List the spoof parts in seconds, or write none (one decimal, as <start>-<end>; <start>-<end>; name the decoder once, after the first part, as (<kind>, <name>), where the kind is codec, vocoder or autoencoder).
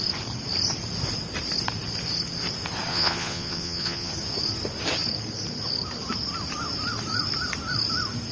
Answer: 2.9-4.1 (vocoder, Vocos)